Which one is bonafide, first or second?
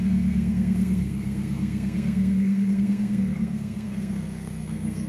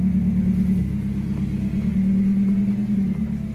second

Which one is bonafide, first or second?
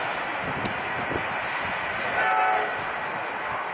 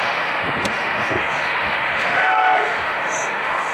first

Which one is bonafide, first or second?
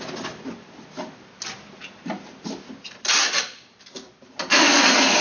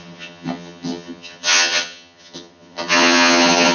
first